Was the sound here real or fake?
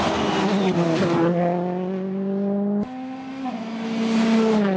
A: real